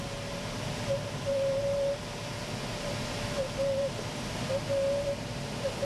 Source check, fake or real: real